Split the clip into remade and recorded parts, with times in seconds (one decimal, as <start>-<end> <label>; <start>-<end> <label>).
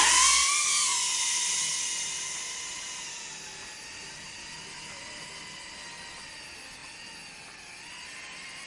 0.0-0.9 recorded; 0.9-1.6 remade; 1.6-8.7 recorded